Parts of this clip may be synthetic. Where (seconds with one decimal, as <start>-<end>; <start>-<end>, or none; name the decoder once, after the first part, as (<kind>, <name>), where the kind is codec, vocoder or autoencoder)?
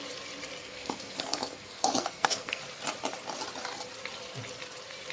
0.6-2.6 (codec, SNAC)